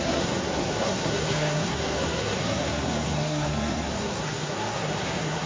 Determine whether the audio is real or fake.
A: fake